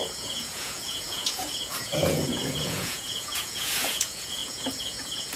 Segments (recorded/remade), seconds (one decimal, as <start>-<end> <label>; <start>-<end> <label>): 0.0-5.4 remade